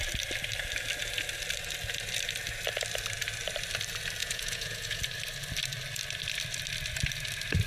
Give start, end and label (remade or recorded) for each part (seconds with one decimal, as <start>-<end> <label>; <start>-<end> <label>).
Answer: 0.0-4.2 recorded; 4.2-5.0 remade; 5.0-7.7 recorded